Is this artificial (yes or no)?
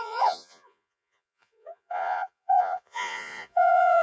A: yes